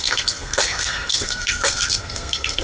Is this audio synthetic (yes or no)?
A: yes